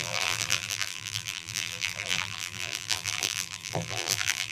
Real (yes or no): no